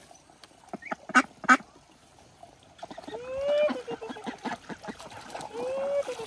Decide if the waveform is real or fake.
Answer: real